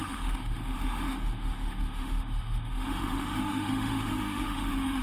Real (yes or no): no